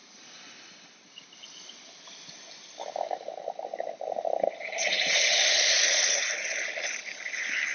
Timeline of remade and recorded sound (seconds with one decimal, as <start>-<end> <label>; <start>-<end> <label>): 0.0-7.7 recorded